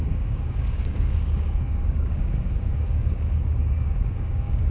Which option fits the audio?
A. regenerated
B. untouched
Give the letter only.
A